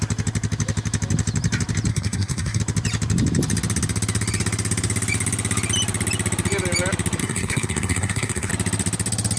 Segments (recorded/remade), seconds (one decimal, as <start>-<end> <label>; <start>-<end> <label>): 0.0-1.9 recorded; 1.9-2.6 remade; 2.6-7.2 recorded; 7.2-8.5 remade; 8.5-9.4 recorded